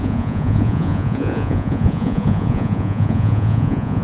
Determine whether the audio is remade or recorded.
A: remade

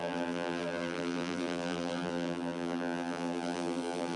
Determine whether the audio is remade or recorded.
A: remade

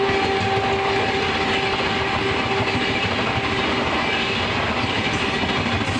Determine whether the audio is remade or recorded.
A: recorded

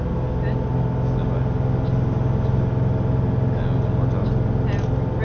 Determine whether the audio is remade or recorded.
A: recorded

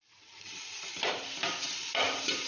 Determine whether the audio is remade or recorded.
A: remade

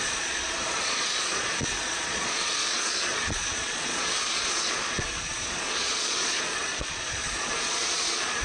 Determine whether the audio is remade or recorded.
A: remade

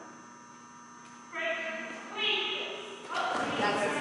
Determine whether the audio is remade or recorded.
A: recorded